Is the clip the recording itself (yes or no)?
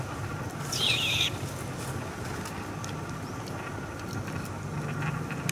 yes